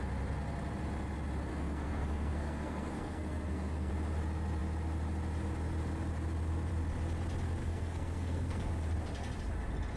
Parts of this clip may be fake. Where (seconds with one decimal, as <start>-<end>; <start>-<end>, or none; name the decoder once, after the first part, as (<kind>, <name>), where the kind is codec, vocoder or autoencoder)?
1.5-3.9 (codec, SNAC); 7.6-8.7